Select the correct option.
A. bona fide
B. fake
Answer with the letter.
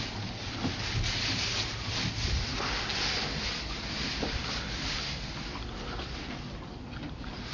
A